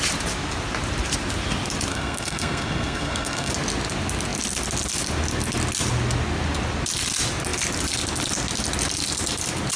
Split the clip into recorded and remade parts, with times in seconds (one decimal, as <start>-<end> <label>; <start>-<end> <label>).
0.0-1.9 recorded; 1.9-3.5 remade; 3.5-9.8 recorded